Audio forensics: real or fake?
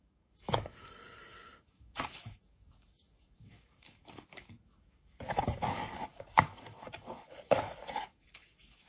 fake